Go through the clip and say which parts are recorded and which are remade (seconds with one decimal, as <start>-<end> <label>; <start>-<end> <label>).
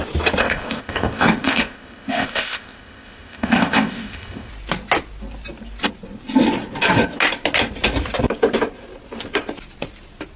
0.0-0.4 recorded; 0.4-4.5 remade; 4.5-10.4 recorded